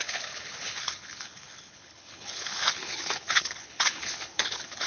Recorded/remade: remade